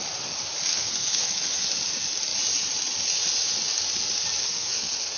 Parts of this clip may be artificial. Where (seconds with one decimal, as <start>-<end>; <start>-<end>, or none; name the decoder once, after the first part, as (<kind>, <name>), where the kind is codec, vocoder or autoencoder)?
0.7-1.7 (codec, SNAC); 4.4-5.2